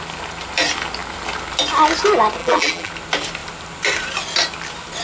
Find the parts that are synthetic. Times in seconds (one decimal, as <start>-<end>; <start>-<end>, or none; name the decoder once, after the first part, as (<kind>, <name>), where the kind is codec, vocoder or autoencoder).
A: 2.4-2.9 (vocoder, BigVGAN v2)